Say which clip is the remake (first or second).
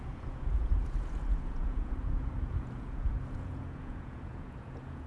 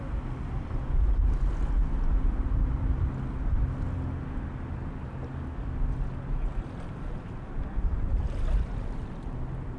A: first